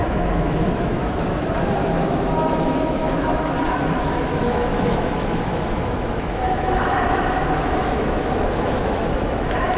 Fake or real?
fake